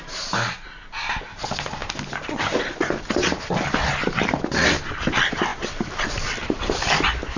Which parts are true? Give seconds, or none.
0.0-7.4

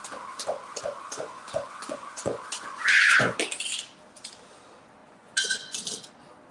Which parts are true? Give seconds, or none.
0.0-0.7; 3.4-5.0; 5.8-6.5

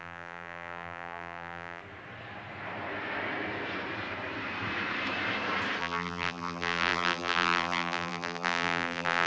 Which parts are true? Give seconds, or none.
1.8-5.8

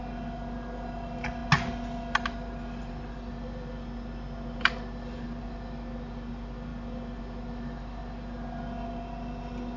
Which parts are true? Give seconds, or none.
0.0-9.8

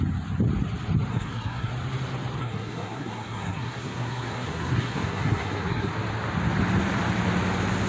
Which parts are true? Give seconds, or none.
0.0-1.1; 1.7-2.4; 5.9-7.9

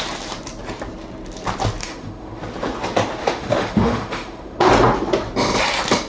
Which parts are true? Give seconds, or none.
0.0-1.8; 2.4-3.2; 4.7-6.1